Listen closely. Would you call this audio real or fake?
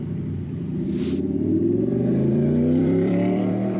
fake